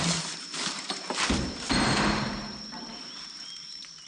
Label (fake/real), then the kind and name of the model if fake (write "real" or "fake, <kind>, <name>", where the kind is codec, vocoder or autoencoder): fake, vocoder, BigVGAN v2